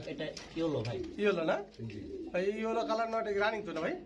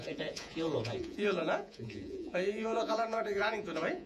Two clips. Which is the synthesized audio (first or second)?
second